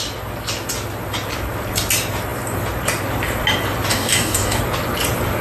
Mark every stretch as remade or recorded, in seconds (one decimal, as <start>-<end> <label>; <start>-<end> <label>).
0.0-3.9 recorded; 3.9-4.6 remade; 4.6-5.4 recorded